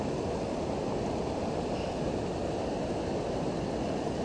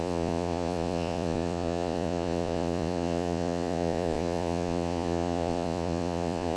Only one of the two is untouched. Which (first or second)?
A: first